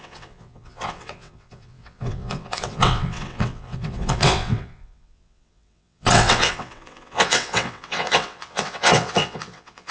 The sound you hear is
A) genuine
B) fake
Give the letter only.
B